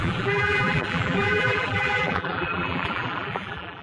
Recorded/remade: remade